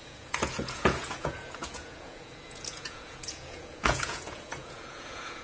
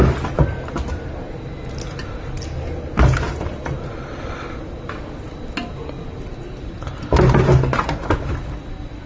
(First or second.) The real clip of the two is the second